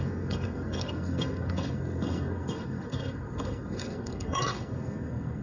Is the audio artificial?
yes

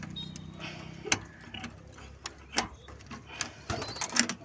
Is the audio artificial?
no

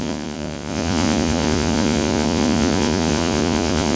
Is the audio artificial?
yes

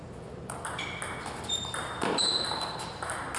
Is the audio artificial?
no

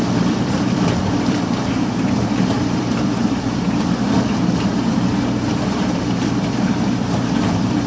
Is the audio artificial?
yes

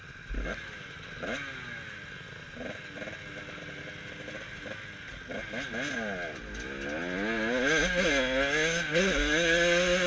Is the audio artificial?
no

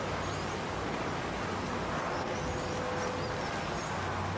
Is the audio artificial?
no